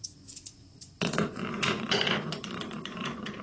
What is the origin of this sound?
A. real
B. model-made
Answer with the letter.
B